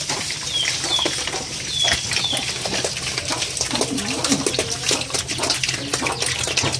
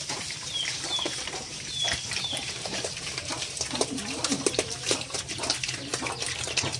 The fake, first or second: second